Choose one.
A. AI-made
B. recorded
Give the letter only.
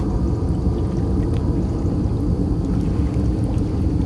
B